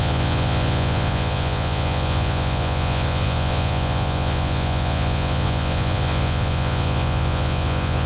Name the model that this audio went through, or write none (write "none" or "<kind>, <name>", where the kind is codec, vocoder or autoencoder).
vocoder, Vocos